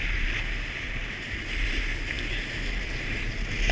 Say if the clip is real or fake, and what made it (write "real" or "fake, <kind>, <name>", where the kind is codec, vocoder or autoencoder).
real